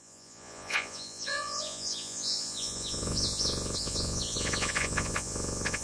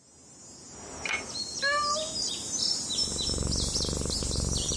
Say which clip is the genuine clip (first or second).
second